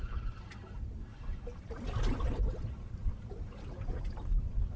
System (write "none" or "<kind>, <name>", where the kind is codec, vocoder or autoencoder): none